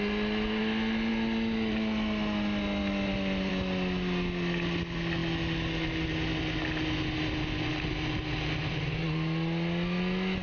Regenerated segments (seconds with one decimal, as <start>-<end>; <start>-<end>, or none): 2.8-3.5